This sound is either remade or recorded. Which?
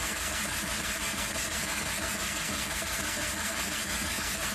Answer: remade